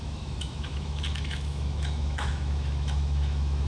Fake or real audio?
fake